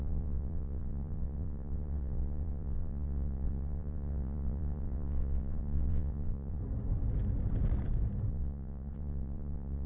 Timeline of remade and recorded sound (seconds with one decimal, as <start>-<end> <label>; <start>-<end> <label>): 0.0-6.6 remade; 6.6-8.3 recorded; 8.3-9.9 remade